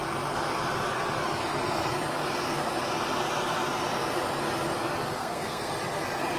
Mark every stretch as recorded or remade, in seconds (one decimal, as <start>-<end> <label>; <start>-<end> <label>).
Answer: 0.0-5.2 recorded; 5.2-5.7 remade; 5.7-6.4 recorded